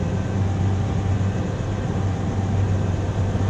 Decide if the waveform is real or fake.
real